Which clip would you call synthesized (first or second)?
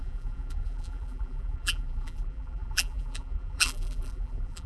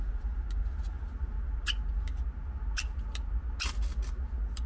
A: first